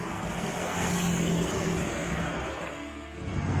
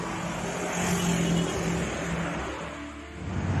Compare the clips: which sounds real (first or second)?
second